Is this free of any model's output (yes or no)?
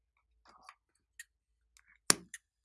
yes